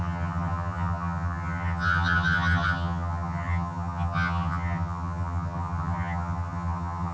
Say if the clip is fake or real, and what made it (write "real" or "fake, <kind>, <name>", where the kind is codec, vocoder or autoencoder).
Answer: fake, vocoder, HiFi-GAN